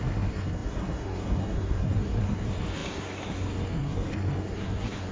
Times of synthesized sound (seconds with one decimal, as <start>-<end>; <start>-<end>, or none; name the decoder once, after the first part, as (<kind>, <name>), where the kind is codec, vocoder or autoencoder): 0.0-5.1 (codec, SNAC)